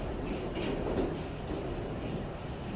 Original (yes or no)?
yes